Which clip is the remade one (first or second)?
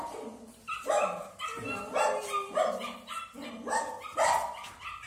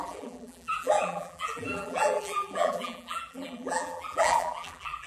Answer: second